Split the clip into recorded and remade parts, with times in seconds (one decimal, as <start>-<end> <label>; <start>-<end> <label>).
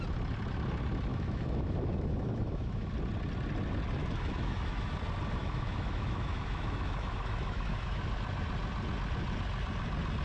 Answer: 0.0-1.1 recorded; 1.1-2.9 remade; 2.9-4.0 recorded; 4.0-4.9 remade; 4.9-5.4 recorded; 5.4-8.0 remade; 8.0-10.2 recorded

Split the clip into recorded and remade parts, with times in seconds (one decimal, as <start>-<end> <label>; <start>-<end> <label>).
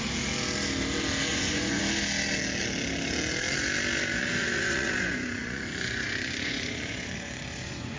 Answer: 0.0-1.3 recorded; 1.3-1.8 remade; 1.8-4.2 recorded; 4.2-8.0 remade